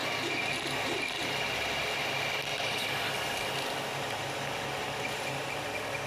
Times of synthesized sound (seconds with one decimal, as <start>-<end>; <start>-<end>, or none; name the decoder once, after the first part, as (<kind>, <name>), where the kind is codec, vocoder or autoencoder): none

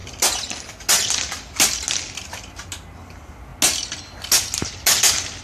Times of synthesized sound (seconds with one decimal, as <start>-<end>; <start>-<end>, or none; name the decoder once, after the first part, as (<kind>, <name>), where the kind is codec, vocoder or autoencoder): none

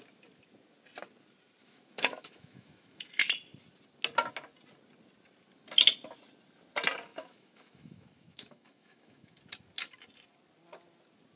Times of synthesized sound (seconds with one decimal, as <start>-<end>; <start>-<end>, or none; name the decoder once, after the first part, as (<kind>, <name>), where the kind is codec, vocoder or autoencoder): 1.6-3.0 (autoencoder, DAC-VAE); 7.1-9.4

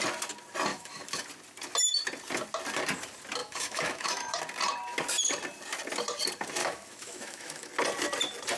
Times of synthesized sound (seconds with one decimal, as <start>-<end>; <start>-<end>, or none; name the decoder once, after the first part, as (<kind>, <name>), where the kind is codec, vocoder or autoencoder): 0.7-1.2 (autoencoder, DAC-VAE); 3.4-4.4; 6.6-7.7

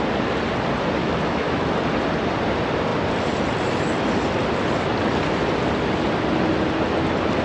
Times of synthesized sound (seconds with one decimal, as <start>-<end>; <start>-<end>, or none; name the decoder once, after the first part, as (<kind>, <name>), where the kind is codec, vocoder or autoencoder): 1.0-1.7 (autoencoder, DAC-VAE)